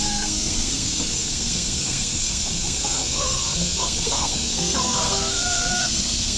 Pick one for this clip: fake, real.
fake